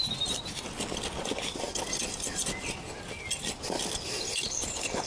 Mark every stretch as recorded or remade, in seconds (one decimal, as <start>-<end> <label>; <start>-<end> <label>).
0.0-4.3 recorded; 4.3-5.1 remade